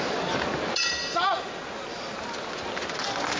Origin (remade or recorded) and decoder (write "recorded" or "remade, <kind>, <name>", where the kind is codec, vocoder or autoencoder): recorded